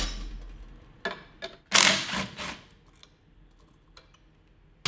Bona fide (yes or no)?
yes